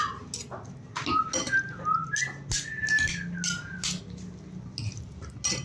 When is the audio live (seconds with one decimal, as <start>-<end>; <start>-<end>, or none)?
0.0-5.6